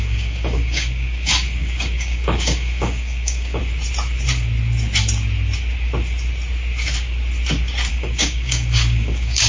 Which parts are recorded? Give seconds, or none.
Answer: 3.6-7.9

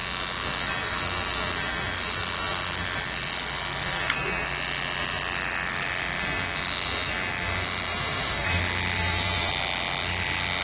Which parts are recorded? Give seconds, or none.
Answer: 0.0-7.9; 8.6-9.0; 9.5-10.6

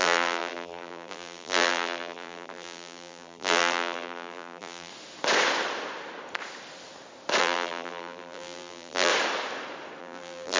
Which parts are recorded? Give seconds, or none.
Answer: 4.9-7.4; 9.1-10.0

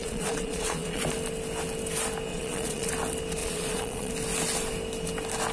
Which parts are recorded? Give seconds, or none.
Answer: 1.0-2.3; 2.9-3.4; 4.1-5.5